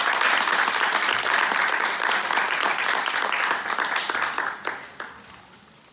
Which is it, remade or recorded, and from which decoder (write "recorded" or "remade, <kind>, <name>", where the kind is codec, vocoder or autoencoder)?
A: recorded